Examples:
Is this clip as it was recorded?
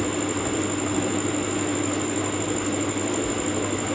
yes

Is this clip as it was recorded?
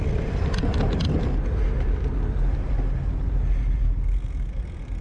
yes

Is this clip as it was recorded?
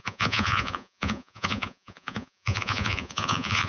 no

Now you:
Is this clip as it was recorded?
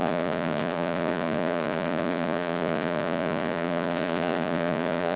no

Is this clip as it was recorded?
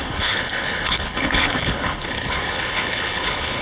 no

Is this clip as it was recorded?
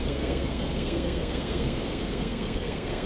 no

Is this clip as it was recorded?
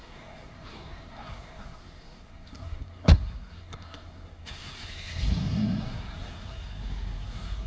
no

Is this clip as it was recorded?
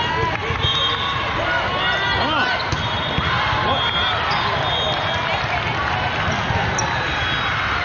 yes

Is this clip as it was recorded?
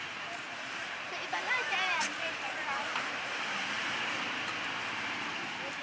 no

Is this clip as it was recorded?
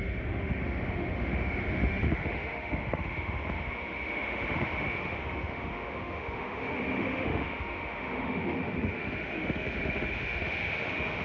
no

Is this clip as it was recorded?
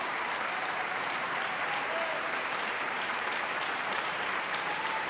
no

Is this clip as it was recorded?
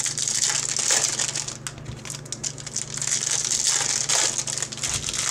yes